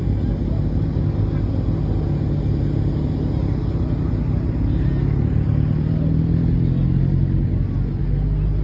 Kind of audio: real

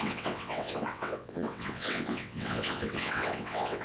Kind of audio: fake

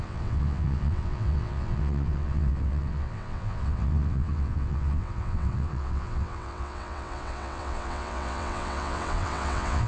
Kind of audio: fake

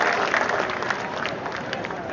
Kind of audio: real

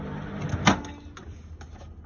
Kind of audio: real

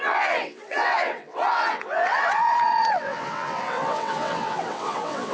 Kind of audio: fake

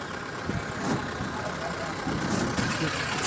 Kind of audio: real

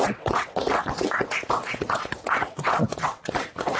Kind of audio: fake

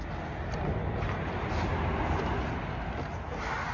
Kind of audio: real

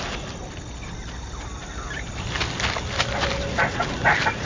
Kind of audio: real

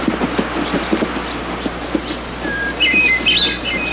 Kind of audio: real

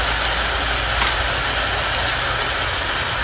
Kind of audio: real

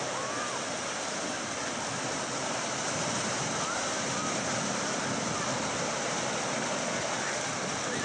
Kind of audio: real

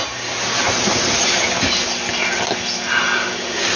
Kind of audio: real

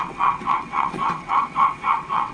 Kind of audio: fake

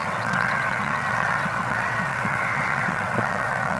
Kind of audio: fake